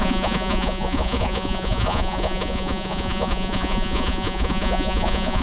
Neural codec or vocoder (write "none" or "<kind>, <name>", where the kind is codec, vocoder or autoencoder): vocoder, Vocos